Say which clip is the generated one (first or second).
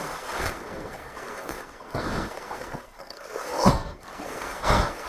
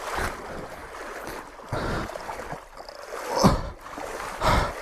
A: first